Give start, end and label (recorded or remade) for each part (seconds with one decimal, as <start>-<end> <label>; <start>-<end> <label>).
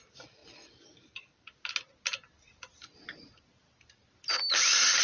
0.0-5.0 recorded